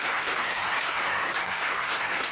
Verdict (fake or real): fake